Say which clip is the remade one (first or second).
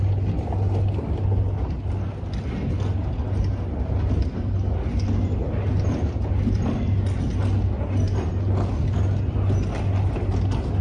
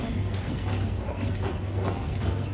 second